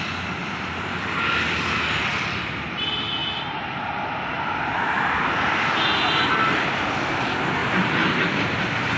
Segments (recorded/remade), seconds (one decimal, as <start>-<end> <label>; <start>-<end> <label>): 0.0-0.4 recorded; 0.4-1.6 remade; 1.6-7.6 recorded; 7.6-8.2 remade; 8.2-9.0 recorded